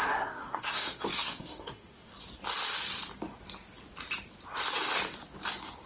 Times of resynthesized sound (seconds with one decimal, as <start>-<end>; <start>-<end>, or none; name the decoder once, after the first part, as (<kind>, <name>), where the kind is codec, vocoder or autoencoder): 0.0-2.1 (codec, SNAC)

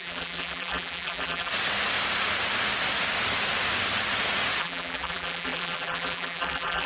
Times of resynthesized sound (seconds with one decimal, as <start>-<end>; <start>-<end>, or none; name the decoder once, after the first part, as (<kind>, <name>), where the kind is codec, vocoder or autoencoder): 0.0-1.5 (vocoder, BigVGAN v2); 4.6-6.9

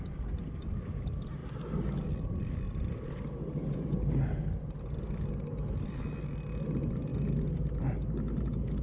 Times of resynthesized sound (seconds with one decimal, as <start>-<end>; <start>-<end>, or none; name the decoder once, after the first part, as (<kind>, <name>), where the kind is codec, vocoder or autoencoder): 7.1-7.8 (vocoder, BigVGAN v2)

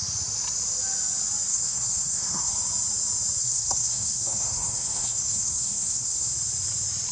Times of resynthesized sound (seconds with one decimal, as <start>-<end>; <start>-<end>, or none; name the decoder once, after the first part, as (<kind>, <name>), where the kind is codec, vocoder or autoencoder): 1.5-2.5 (codec, SNAC); 3.4-6.3

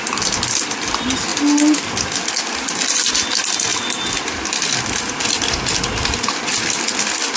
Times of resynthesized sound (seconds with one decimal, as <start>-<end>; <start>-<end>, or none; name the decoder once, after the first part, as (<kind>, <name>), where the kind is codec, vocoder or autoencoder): none

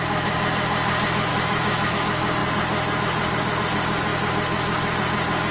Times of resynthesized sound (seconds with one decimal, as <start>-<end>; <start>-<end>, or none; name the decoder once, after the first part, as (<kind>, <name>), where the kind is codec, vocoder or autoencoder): 1.3-1.9 (autoencoder, DAC-VAE)

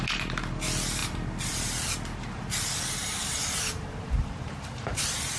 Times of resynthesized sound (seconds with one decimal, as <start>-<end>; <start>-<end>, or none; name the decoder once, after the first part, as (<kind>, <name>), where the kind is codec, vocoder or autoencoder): 1.0-1.9 (vocoder, BigVGAN v2); 3.0-5.4